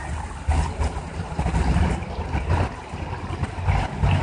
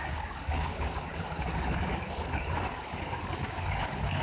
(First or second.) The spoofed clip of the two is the second